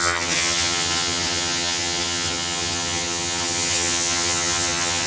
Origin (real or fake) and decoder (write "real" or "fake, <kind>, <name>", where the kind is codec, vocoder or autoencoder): fake, vocoder, HiFi-GAN